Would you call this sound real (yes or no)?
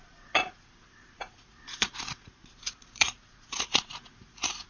no